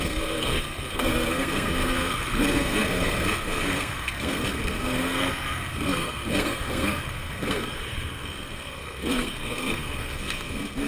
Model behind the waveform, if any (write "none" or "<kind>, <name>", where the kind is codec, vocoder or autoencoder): codec, SNAC